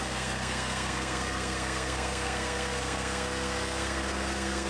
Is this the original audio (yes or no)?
no